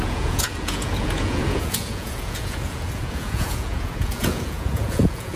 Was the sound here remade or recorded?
remade